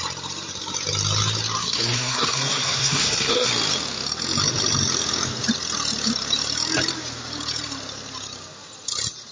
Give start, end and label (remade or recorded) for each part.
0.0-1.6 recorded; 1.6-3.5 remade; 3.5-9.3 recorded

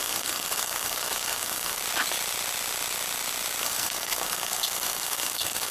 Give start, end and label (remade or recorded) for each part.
0.0-1.8 remade; 1.8-3.6 recorded; 3.6-5.7 remade

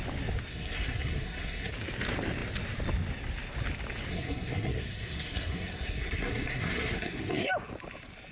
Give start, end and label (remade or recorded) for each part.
0.0-0.5 recorded; 0.5-1.7 remade; 1.7-4.1 recorded; 4.1-7.5 remade; 7.5-8.3 recorded

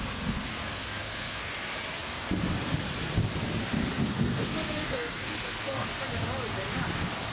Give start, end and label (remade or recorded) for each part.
0.0-0.5 recorded; 0.5-1.5 remade; 1.5-4.1 recorded; 4.1-5.9 remade; 5.9-7.3 recorded